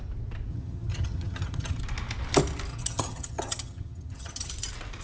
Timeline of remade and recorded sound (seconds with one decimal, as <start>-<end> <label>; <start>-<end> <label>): 0.0-0.5 recorded; 0.5-1.8 remade; 1.8-2.7 recorded; 2.7-4.5 remade; 4.5-5.0 recorded